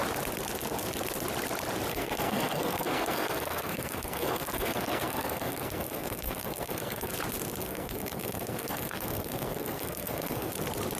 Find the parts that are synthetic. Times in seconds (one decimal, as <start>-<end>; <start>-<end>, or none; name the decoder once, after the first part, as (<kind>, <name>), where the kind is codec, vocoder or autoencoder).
1.9-7.1 (codec, SNAC); 7.6-10.5